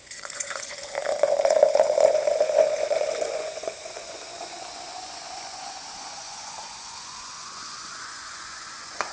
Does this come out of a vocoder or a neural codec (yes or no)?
yes